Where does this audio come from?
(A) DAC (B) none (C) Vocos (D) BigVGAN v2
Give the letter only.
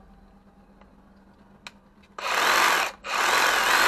B